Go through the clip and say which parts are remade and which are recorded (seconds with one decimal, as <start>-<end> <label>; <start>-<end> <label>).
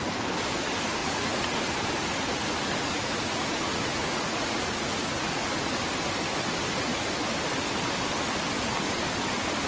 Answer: 0.0-1.0 recorded; 1.0-1.6 remade; 1.6-2.8 recorded; 2.8-5.8 remade; 5.8-9.7 recorded